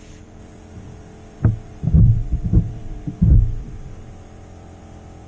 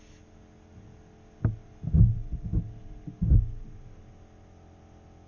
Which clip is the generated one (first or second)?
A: first